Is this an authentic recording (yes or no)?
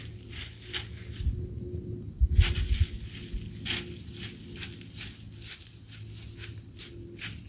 yes